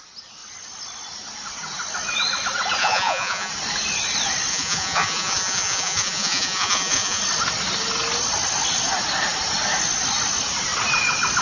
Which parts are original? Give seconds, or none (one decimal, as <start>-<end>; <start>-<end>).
0.0-2.8; 3.5-4.5; 7.2-11.4